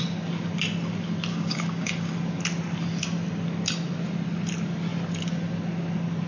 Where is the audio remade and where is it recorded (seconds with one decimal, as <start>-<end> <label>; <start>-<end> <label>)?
0.0-1.3 recorded; 1.3-2.1 remade; 2.1-6.3 recorded